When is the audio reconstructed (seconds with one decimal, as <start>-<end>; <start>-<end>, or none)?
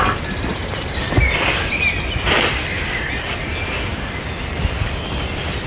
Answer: none